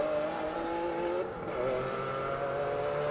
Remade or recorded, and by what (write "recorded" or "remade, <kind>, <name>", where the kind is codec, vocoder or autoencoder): recorded